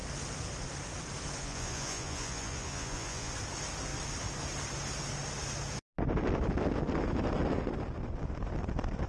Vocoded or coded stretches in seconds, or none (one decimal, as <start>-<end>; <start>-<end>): 1.4-3.3

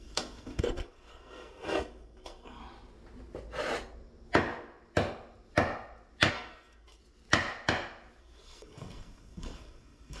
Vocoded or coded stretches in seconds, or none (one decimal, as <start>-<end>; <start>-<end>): 0.0-2.6; 6.3-7.0; 8.2-10.2

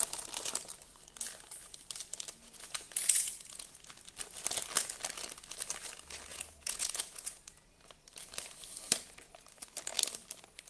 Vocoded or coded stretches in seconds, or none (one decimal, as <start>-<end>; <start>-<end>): 2.4-3.8; 6.3-7.7